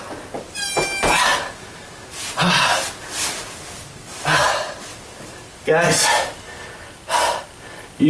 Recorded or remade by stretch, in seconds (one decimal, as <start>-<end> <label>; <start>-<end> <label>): 0.0-4.9 recorded; 4.9-8.1 remade